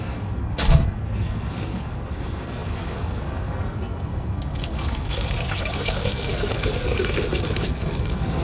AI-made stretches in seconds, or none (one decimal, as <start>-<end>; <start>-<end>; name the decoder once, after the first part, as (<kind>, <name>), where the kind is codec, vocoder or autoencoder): 0.0-8.4 (codec, SNAC)